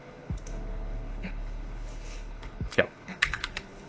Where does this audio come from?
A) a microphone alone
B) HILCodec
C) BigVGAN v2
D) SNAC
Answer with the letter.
B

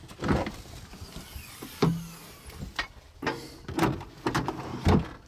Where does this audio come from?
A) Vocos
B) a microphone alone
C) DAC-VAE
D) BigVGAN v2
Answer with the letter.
B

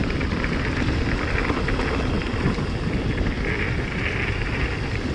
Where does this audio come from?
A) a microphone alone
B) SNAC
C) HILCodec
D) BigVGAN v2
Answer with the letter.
A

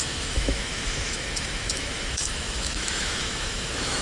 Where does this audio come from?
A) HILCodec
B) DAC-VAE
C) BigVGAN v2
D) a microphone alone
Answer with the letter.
B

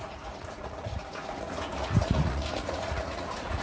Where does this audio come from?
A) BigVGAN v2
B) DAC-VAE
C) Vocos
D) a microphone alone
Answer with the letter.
C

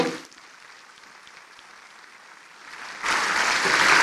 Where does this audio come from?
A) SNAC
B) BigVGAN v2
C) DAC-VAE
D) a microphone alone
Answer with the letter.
D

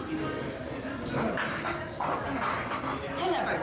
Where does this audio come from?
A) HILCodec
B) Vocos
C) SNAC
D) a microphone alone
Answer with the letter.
D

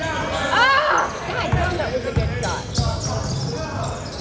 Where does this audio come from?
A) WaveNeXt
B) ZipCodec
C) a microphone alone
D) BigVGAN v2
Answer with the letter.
C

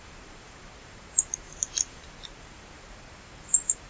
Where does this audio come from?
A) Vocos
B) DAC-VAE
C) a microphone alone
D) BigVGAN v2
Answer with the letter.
D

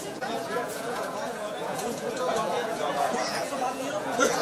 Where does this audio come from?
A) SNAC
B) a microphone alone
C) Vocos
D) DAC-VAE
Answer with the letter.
C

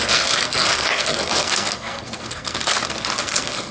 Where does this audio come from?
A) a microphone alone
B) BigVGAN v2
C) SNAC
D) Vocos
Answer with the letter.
C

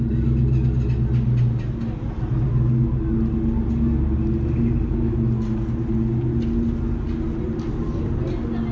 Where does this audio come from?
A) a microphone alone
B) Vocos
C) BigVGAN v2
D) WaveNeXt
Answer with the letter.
A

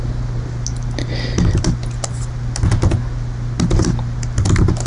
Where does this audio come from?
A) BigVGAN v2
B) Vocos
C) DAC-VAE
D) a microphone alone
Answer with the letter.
D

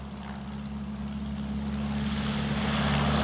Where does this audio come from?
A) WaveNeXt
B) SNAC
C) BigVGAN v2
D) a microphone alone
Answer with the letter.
D